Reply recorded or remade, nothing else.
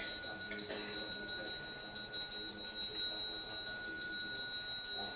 recorded